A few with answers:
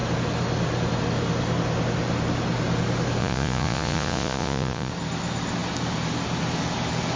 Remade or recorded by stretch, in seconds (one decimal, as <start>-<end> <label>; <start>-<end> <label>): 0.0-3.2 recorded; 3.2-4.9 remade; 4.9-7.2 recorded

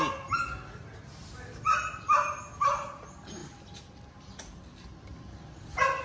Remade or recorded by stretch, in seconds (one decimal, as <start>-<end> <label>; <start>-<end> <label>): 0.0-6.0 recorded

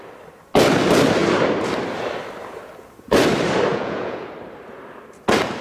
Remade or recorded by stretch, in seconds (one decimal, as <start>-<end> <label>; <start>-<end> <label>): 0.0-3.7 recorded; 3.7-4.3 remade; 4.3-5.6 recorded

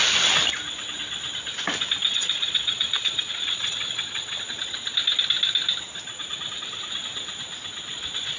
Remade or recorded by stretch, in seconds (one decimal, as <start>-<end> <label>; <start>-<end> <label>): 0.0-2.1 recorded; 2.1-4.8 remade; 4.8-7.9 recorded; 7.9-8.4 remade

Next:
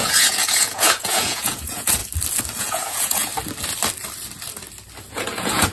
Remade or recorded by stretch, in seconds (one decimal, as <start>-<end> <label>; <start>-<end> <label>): 0.0-2.0 remade; 2.0-2.6 recorded; 2.6-3.3 remade; 3.3-5.1 recorded; 5.1-5.7 remade